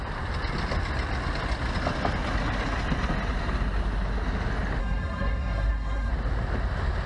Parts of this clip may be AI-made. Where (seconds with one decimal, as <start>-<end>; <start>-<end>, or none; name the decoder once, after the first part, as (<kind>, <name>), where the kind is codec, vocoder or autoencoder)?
4.8-6.1 (codec, SNAC)